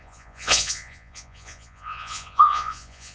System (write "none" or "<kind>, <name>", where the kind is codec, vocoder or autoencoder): vocoder, Vocos